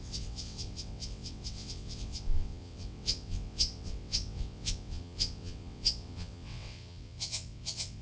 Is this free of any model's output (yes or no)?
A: no